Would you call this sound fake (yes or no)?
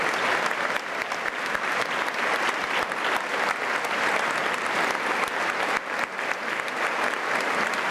no